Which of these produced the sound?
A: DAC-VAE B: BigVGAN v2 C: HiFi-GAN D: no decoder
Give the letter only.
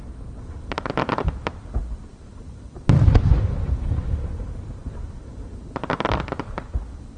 D